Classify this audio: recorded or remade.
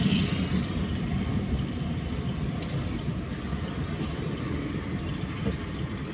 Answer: recorded